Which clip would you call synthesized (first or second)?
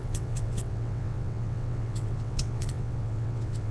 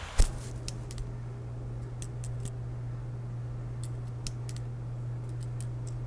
first